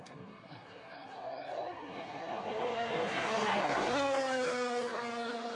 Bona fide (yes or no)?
no